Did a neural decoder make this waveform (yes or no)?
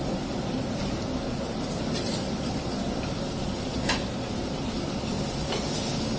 no